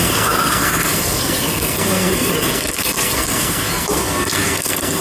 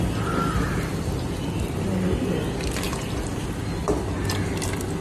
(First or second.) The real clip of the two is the second